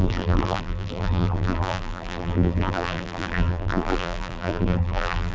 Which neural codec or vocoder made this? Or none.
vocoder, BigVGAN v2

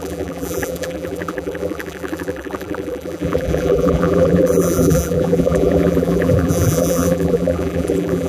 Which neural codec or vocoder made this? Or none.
vocoder, BigVGAN v2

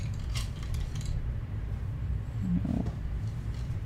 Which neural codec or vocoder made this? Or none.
vocoder, BigVGAN v2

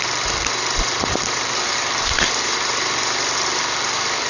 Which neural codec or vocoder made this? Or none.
vocoder, BigVGAN v2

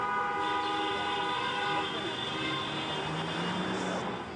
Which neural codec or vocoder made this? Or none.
none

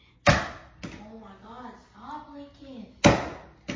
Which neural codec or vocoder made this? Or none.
none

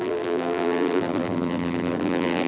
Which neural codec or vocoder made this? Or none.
vocoder, BigVGAN v2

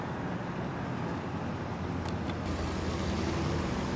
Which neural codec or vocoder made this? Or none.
none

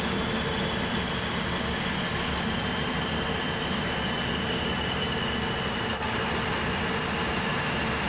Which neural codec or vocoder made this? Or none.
none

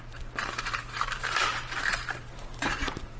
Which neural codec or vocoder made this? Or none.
vocoder, BigVGAN v2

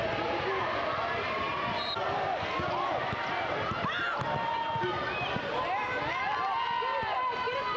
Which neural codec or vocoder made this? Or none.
none